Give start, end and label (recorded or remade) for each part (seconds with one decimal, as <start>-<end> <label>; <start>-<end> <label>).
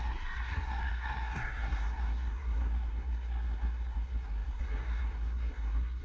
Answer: 0.0-6.0 remade